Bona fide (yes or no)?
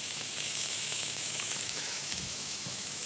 no